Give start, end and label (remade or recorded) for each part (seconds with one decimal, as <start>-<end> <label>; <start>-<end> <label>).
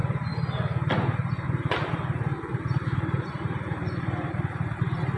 0.0-1.3 recorded; 1.3-5.2 remade